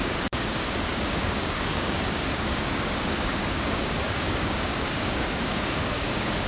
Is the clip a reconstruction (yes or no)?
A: yes